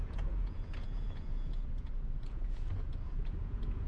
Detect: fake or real fake